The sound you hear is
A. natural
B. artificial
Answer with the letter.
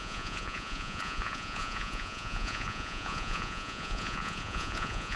B